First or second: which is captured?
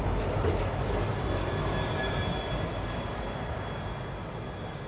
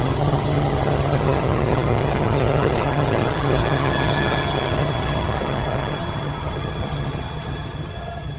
first